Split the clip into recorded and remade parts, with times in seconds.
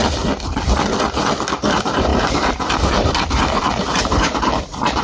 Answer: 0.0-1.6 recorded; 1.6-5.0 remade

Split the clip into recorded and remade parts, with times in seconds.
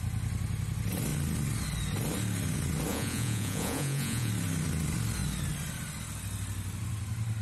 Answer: 0.0-2.9 recorded; 2.9-4.3 remade; 4.3-7.4 recorded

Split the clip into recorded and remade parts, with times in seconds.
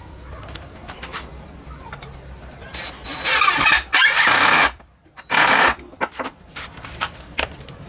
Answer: 0.0-3.1 remade; 3.1-4.6 recorded; 4.6-7.9 remade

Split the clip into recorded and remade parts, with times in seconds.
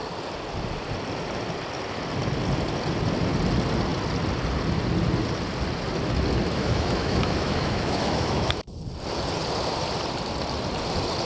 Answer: 0.0-6.6 recorded; 6.6-8.6 remade; 8.6-11.3 recorded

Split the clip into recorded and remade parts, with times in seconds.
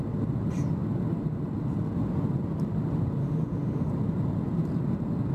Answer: 0.0-3.2 recorded; 3.2-3.9 remade; 3.9-5.3 recorded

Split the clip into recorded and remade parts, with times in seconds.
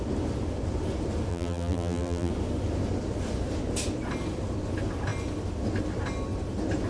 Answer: 0.0-1.3 recorded; 1.3-2.3 remade; 2.3-6.9 recorded